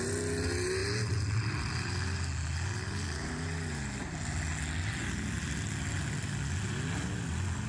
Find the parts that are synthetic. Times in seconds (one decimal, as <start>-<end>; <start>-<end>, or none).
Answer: none